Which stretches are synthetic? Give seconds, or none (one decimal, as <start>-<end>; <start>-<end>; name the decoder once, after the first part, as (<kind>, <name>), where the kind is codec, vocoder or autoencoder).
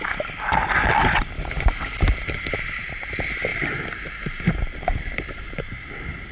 3.5-6.3 (vocoder, BigVGAN v2)